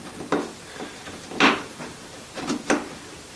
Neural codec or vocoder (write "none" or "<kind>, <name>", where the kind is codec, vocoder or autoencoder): vocoder, BigVGAN v2